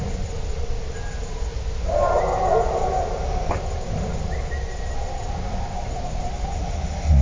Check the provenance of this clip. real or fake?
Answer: real